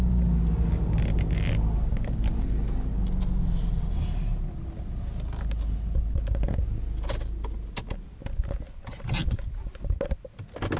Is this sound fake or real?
real